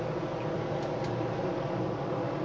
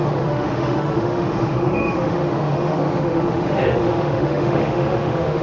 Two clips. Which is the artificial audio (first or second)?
second